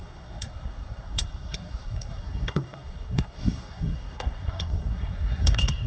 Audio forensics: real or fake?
fake